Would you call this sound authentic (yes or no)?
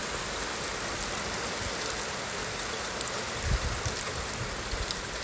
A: yes